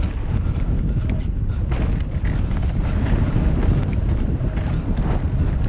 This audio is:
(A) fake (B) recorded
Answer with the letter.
B